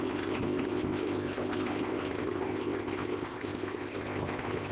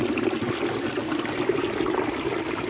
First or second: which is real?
second